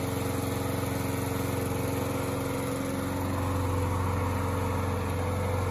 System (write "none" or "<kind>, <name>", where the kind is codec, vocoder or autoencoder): none